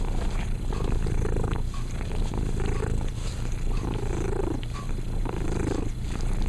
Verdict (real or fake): real